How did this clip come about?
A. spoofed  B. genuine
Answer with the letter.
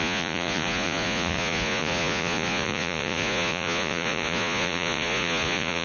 A